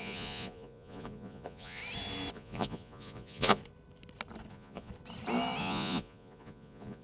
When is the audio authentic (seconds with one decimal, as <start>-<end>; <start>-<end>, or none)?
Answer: 1.8-2.3; 3.6-4.5; 4.9-5.6